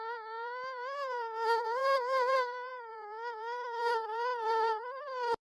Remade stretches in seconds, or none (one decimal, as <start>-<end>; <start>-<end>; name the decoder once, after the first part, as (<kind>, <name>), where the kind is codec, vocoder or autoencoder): 0.0-5.4 (vocoder, BigVGAN v2)